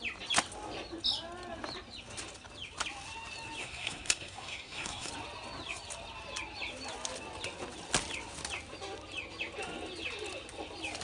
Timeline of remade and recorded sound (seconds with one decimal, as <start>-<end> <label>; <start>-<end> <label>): 0.0-3.6 recorded; 3.6-5.1 remade; 5.1-11.0 recorded